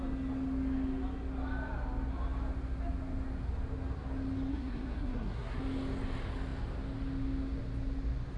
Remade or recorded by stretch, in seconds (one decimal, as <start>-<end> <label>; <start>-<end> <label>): 0.0-4.5 recorded; 4.5-5.6 remade; 5.6-8.4 recorded

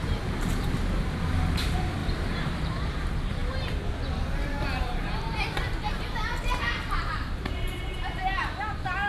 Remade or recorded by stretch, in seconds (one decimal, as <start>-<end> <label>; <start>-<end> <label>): 0.0-3.4 remade; 3.4-4.8 recorded; 4.8-9.1 remade

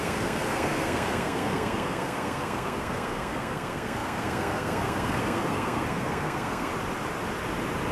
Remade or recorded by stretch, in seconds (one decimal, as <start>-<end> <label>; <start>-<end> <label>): 0.0-6.7 remade; 6.7-7.9 recorded

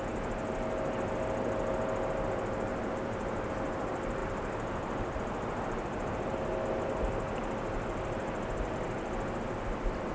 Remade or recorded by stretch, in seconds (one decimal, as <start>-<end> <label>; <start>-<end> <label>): 0.0-2.7 recorded; 2.7-3.5 remade; 3.5-10.1 recorded

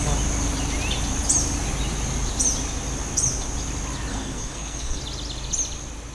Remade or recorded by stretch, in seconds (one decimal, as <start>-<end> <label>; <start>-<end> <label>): 0.0-4.1 recorded; 4.1-5.0 remade; 5.0-6.1 recorded

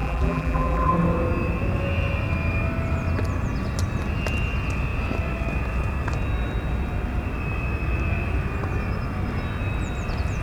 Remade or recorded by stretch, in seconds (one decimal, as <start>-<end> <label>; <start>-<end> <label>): 0.0-0.9 remade; 0.9-10.4 recorded